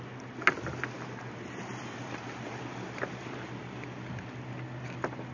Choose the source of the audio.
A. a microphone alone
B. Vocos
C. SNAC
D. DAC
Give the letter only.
A